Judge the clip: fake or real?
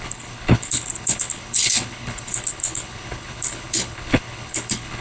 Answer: fake